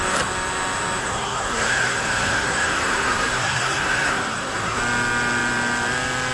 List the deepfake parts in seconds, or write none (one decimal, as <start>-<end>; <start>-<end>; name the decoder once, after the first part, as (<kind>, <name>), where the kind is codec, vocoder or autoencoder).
1.0-4.8 (codec, SNAC)